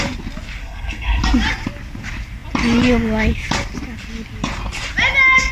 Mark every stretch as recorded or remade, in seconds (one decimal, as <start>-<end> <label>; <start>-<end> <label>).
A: 0.0-0.6 recorded; 0.6-1.2 remade; 1.2-5.5 recorded